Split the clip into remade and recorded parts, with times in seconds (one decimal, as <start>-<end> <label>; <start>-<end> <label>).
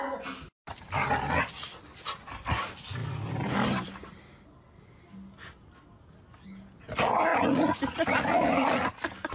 0.0-7.3 recorded; 7.3-8.5 remade; 8.5-9.3 recorded